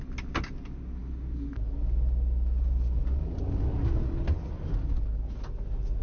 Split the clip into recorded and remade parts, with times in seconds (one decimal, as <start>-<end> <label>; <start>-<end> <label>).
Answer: 0.0-6.0 recorded